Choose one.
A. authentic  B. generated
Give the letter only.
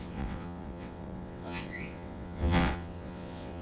B